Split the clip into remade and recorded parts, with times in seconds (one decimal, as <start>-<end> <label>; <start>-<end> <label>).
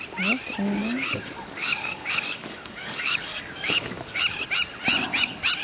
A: 0.0-0.8 recorded; 0.8-4.2 remade; 4.2-5.6 recorded